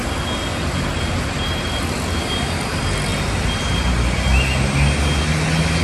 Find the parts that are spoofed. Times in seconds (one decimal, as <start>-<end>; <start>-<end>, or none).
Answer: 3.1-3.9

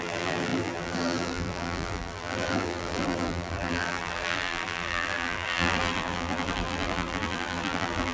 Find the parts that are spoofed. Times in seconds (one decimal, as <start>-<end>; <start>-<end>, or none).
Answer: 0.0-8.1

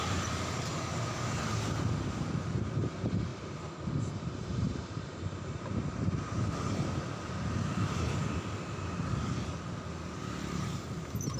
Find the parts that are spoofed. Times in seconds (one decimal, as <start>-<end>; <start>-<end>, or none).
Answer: 0.0-3.3; 4.0-8.2; 10.2-11.4

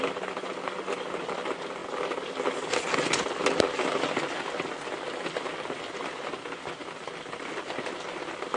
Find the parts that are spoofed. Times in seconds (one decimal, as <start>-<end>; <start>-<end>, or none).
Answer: 1.8-3.7

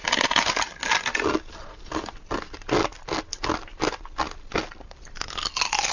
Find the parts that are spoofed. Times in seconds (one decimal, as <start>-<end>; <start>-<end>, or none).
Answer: none

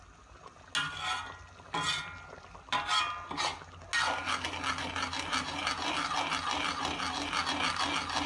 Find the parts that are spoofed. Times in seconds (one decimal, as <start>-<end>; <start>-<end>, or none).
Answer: none